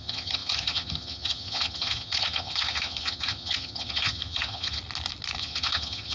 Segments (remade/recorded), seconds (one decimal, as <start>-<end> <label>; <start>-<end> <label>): 0.0-4.8 remade; 4.8-5.4 recorded; 5.4-6.1 remade